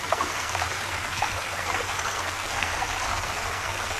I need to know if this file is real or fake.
fake